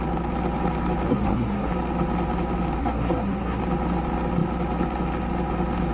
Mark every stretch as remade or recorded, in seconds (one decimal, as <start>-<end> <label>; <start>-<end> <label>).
0.0-1.1 recorded; 1.1-1.7 remade; 1.7-2.8 recorded; 2.8-3.6 remade; 3.6-5.9 recorded